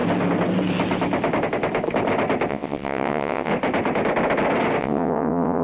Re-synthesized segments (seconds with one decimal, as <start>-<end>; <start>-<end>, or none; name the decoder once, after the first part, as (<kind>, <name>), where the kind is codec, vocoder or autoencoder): 2.5-3.5 (vocoder, WaveNeXt); 4.8-5.6